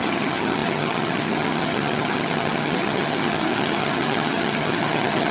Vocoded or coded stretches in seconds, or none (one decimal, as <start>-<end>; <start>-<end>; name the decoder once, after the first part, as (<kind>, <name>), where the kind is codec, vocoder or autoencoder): 0.0-5.3 (vocoder, HiFi-GAN)